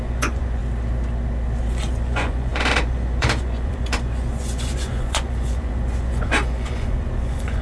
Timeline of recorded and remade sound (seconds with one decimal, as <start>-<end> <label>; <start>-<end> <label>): 0.0-0.6 remade; 0.6-1.7 recorded; 1.7-7.6 remade